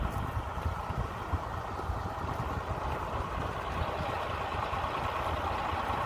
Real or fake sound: real